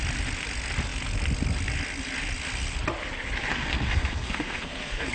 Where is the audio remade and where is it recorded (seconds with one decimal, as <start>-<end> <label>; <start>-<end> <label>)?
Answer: 0.0-3.5 recorded; 3.5-5.1 remade

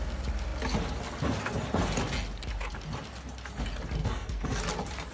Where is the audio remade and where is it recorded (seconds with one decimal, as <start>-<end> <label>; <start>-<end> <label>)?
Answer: 0.0-4.0 recorded; 4.0-4.6 remade; 4.6-5.1 recorded

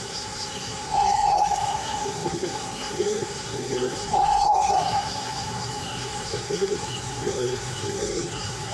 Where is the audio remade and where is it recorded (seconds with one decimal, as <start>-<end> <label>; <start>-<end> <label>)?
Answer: 0.0-8.7 remade

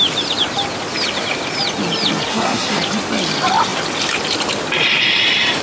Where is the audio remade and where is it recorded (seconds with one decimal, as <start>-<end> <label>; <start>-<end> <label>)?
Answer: 0.0-2.3 recorded; 2.3-2.8 remade; 2.8-5.6 recorded

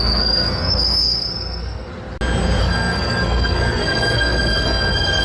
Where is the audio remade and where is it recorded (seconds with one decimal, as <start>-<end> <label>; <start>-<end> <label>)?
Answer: 0.0-1.9 remade; 1.9-2.6 recorded; 2.6-5.2 remade

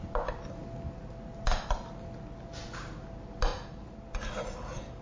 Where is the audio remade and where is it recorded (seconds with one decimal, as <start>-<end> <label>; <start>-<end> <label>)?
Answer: 0.0-5.0 recorded

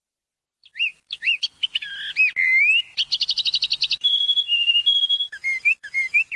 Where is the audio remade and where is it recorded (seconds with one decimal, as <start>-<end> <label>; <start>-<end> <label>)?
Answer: 0.0-6.4 recorded

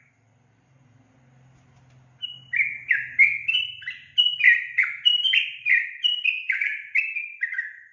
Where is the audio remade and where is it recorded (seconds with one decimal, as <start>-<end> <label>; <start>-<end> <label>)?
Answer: 0.0-7.9 recorded